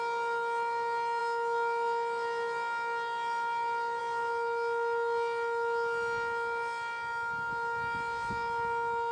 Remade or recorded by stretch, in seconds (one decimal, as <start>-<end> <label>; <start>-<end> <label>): 0.0-9.1 recorded